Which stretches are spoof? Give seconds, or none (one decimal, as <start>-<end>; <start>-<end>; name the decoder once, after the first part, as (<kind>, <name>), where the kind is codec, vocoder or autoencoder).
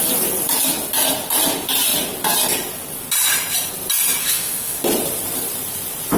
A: 4.2-4.8 (autoencoder, DAC-VAE)